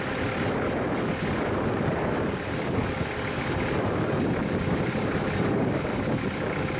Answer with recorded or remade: recorded